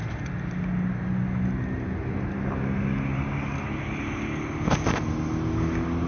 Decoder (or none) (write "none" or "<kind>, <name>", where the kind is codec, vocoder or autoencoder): none